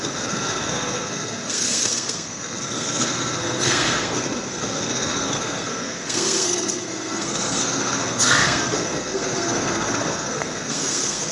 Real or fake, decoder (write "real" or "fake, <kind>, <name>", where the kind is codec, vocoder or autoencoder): fake, codec, SNAC